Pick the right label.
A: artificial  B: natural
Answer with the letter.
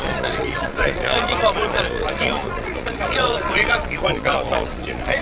A